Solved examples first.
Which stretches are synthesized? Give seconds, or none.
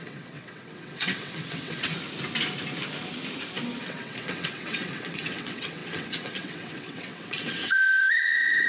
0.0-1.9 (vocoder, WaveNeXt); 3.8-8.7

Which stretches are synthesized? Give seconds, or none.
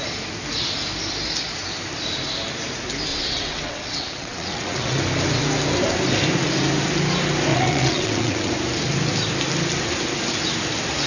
3.1-5.0 (vocoder, WaveNeXt); 7.5-8.5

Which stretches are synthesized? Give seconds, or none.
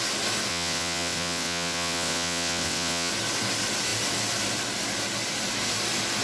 0.5-3.1 (vocoder, WaveNeXt)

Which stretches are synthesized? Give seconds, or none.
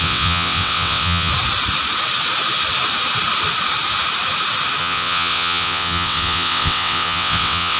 0.0-1.3 (vocoder, WaveNeXt); 4.8-7.8